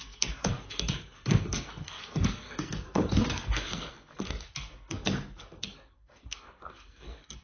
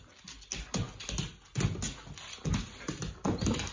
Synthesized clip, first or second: first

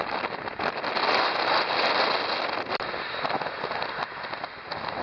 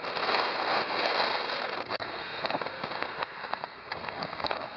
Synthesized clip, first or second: second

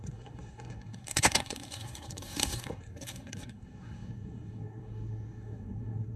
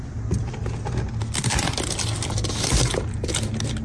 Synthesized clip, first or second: first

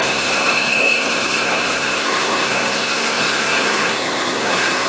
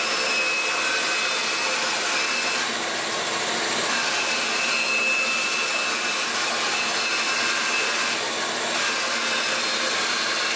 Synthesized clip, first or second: first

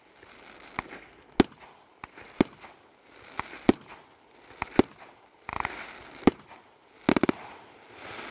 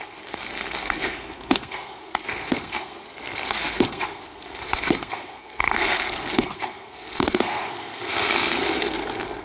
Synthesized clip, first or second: second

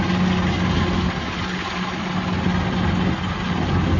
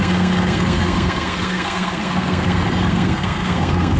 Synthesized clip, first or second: second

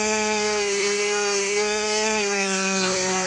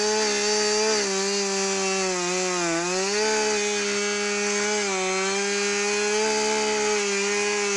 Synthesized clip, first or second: first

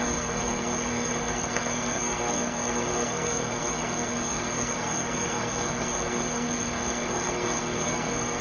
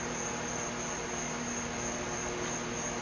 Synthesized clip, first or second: first